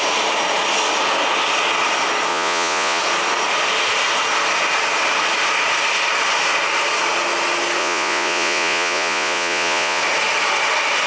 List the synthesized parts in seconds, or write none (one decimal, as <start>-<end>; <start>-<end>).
2.3-3.0; 7.8-10.0